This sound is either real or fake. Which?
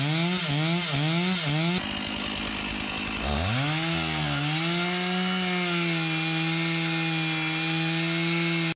real